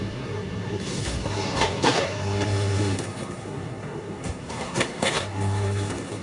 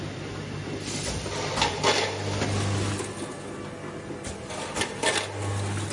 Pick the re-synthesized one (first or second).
first